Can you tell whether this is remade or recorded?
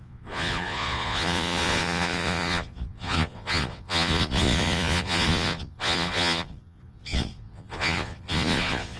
remade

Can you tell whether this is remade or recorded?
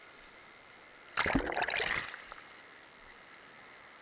recorded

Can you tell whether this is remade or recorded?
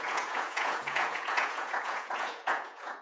remade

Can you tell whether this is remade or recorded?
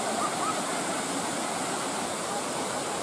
recorded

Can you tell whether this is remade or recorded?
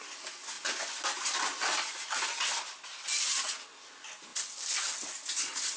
recorded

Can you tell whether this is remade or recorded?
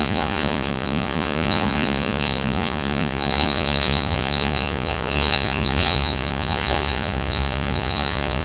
remade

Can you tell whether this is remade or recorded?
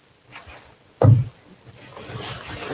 recorded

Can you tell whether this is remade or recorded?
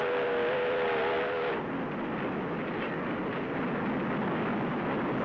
recorded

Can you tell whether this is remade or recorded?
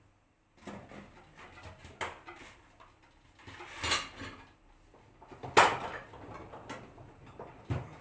recorded